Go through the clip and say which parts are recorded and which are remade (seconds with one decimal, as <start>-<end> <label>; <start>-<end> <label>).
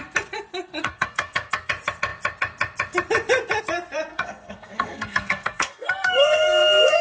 0.0-0.8 recorded; 0.8-1.7 remade; 1.7-4.1 recorded; 4.1-7.0 remade